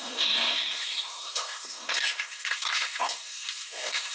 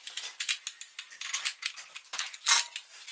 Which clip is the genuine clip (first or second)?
second